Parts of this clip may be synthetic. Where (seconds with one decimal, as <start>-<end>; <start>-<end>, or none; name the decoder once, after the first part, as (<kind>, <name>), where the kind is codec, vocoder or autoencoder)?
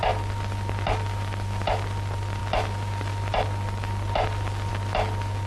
none